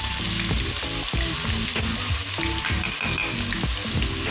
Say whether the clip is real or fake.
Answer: real